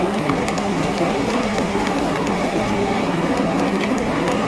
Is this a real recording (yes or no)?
no